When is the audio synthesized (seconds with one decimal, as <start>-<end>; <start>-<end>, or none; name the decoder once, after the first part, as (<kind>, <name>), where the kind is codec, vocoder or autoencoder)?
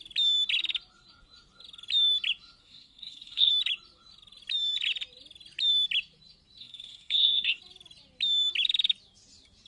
2.6-3.5 (codec, SNAC); 6.6-7.6